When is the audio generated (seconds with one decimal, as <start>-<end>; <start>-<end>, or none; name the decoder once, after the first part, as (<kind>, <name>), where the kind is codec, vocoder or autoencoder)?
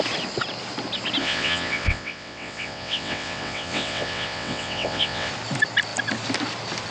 1.2-5.3 (vocoder, WaveNeXt)